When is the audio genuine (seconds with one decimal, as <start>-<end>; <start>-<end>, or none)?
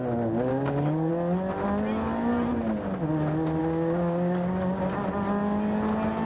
0.0-0.5; 1.1-3.6; 4.8-6.3